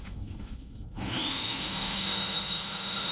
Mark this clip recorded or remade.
remade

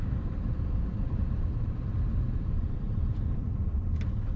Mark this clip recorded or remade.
remade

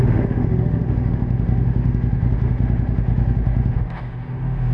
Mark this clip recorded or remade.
remade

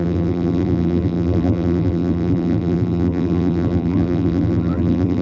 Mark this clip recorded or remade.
remade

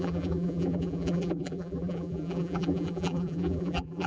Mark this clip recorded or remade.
remade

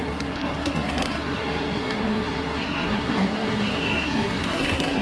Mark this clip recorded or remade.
remade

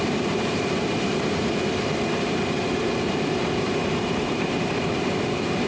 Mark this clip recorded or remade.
remade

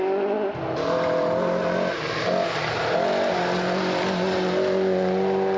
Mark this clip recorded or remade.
recorded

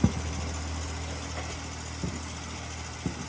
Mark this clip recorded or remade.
recorded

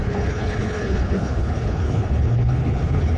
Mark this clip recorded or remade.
remade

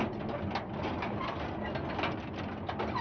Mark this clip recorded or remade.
recorded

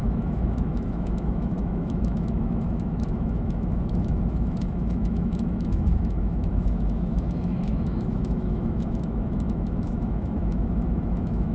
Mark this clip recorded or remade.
remade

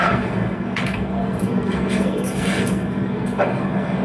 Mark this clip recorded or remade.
remade